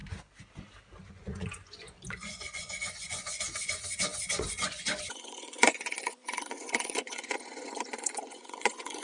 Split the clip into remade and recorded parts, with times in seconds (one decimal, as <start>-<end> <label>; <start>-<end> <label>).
0.0-1.1 recorded; 1.1-9.0 remade